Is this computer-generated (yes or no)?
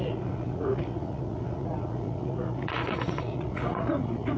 yes